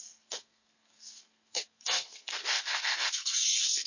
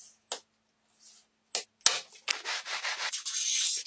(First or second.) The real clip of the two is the second